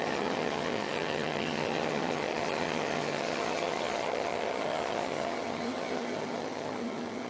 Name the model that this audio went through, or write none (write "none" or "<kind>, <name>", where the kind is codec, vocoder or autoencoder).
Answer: vocoder, HiFi-GAN